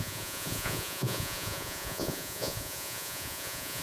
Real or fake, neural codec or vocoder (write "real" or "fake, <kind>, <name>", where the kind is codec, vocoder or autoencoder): fake, vocoder, Vocos